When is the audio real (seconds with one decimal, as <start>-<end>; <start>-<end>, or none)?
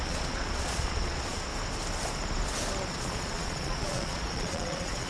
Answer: 1.5-2.9